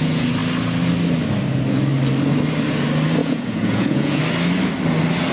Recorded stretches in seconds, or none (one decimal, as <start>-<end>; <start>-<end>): 0.0-3.2; 4.2-5.3

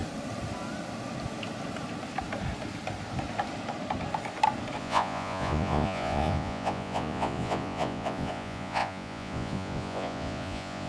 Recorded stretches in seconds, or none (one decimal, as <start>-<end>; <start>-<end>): 0.0-4.8

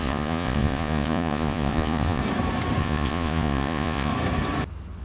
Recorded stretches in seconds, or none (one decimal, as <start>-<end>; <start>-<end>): 2.2-2.8; 4.1-5.0

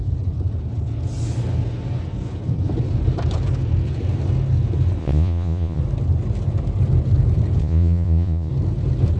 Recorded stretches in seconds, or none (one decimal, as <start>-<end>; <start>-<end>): 0.0-5.0; 5.8-7.6; 8.5-9.2